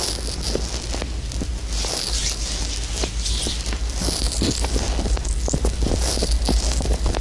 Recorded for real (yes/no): yes